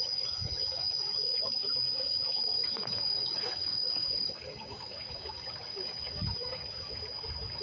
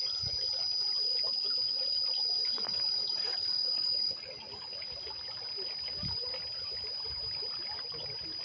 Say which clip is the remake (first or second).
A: first